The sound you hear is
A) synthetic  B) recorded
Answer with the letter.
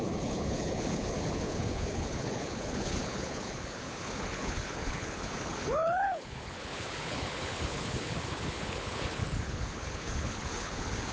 A